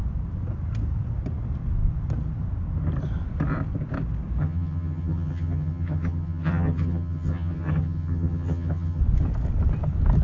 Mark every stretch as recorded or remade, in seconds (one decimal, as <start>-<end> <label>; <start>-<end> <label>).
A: 0.0-4.4 recorded; 4.4-9.0 remade; 9.0-10.2 recorded